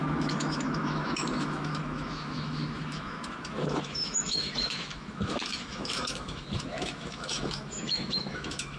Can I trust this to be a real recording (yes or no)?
no